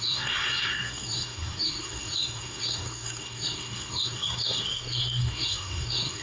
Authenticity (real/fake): fake